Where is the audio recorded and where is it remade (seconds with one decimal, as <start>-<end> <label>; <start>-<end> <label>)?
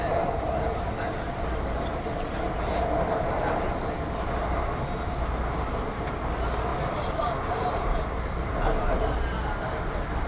0.0-10.3 recorded